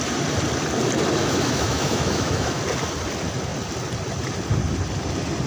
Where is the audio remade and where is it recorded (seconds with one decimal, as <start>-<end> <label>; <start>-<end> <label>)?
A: 0.0-1.2 recorded; 1.2-2.6 remade; 2.6-5.5 recorded